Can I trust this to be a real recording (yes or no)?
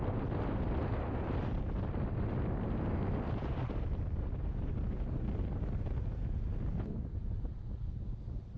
yes